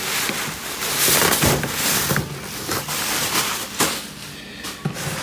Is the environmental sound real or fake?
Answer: real